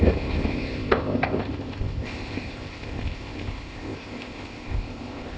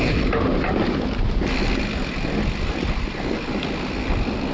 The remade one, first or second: first